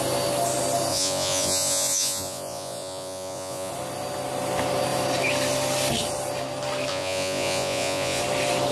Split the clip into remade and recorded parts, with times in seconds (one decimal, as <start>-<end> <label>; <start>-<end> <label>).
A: 0.0-0.9 recorded; 0.9-3.7 remade; 3.7-6.9 recorded; 6.9-8.2 remade; 8.2-8.7 recorded